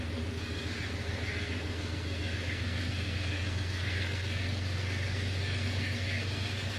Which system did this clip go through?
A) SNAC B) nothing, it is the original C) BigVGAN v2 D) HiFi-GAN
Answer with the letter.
A